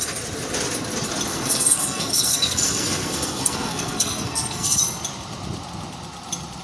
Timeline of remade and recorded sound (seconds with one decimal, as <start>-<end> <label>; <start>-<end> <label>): 0.0-1.3 recorded; 1.3-4.8 remade; 4.8-6.6 recorded